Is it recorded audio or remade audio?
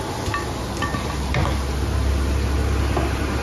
recorded